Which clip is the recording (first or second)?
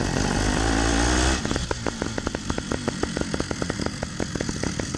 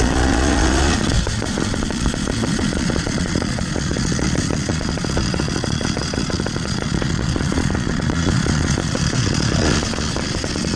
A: first